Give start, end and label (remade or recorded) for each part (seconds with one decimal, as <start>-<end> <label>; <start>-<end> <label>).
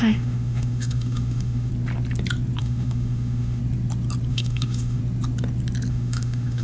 0.0-1.7 remade; 1.7-2.6 recorded; 2.6-3.6 remade; 3.6-4.3 recorded; 4.3-5.0 remade; 5.0-5.9 recorded; 5.9-6.6 remade